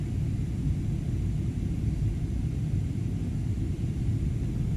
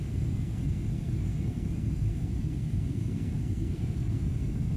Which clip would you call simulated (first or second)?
second